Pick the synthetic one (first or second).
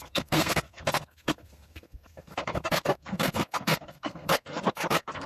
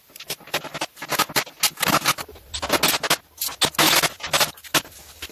first